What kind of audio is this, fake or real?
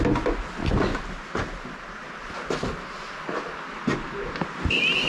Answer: real